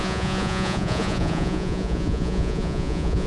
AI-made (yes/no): yes